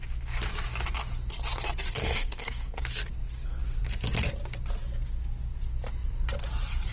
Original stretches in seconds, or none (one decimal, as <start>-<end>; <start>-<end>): 0.0-2.0; 2.8-6.9